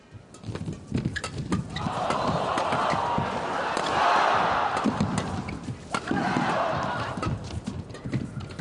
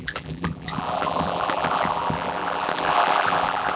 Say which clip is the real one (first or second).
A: first